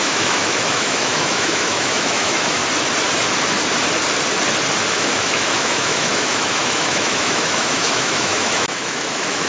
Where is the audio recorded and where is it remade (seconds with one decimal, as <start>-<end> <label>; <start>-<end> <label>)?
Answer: 0.0-2.6 remade; 2.6-4.9 recorded; 4.9-9.5 remade